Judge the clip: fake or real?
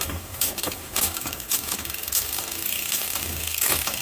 fake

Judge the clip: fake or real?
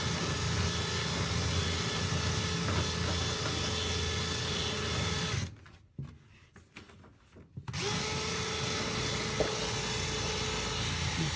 real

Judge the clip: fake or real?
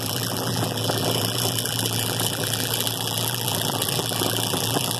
fake